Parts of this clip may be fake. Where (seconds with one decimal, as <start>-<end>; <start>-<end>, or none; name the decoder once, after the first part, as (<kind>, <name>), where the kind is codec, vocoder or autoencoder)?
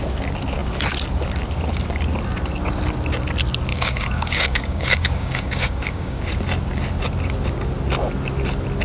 3.7-6.2 (codec, DAC)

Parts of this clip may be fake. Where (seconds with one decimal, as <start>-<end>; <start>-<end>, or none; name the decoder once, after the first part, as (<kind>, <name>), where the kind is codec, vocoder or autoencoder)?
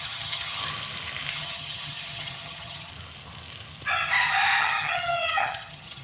0.0-0.6 (vocoder, HiFi-GAN); 1.3-2.9; 4.6-6.0